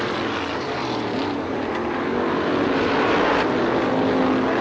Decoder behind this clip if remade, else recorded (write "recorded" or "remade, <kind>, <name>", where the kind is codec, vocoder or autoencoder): recorded